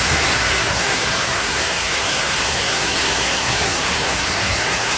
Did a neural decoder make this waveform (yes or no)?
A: yes